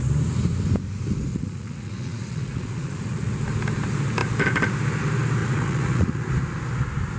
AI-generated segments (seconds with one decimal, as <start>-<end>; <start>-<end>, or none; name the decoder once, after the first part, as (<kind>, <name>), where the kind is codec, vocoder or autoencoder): 1.3-3.3 (vocoder, Vocos); 5.4-6.3